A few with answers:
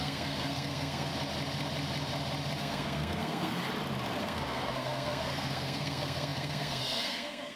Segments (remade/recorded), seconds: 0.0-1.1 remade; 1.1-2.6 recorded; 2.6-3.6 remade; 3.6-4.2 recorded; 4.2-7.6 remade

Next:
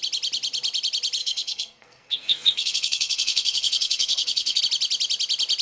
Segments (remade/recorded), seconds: 0.0-1.2 recorded; 1.2-4.6 remade; 4.6-5.6 recorded

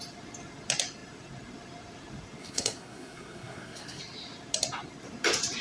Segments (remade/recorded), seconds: 0.0-2.4 recorded; 2.4-4.0 remade; 4.0-5.6 recorded

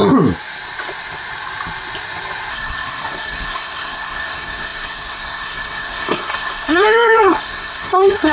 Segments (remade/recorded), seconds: 0.0-2.5 recorded; 2.5-8.3 remade

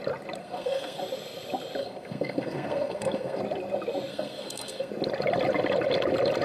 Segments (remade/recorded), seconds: 0.0-0.4 recorded; 0.4-1.0 remade; 1.0-1.8 recorded; 1.8-3.4 remade; 3.4-4.1 recorded; 4.1-4.9 remade; 4.9-6.4 recorded

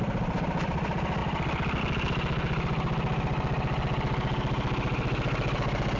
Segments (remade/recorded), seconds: 0.0-6.0 recorded

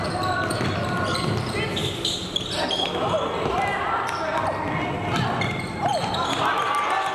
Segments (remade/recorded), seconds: 0.0-7.1 recorded